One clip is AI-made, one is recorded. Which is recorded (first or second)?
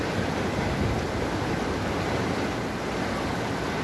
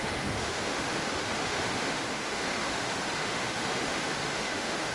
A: first